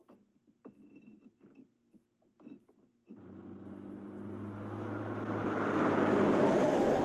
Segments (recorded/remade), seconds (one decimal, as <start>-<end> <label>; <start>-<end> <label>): 0.0-7.0 recorded